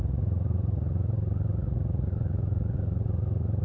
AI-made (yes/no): yes